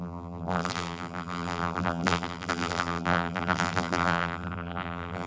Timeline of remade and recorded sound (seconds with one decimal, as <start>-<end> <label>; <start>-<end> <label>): 0.0-5.3 remade